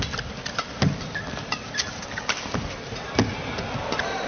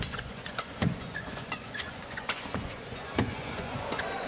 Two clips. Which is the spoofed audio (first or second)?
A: second